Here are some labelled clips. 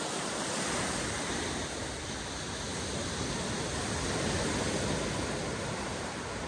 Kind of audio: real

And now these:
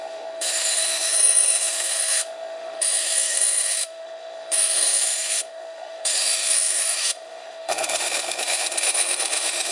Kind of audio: fake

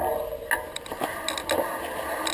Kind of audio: real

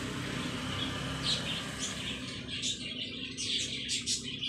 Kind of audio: real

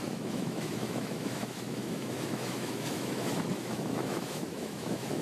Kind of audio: fake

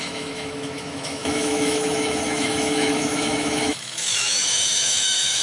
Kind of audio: fake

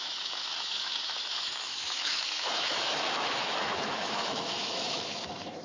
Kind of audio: fake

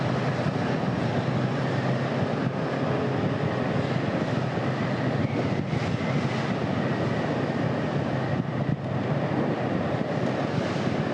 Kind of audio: real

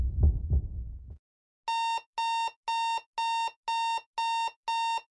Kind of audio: real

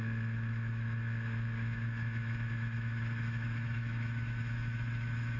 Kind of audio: fake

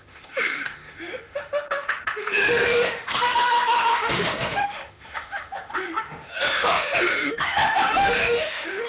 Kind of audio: fake